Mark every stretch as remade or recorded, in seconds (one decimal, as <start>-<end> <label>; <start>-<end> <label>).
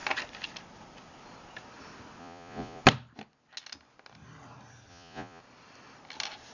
0.0-2.2 recorded; 2.2-2.8 remade; 2.8-4.9 recorded; 4.9-5.4 remade; 5.4-6.5 recorded